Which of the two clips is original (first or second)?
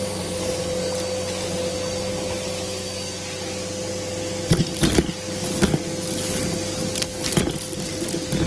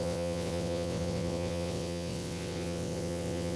first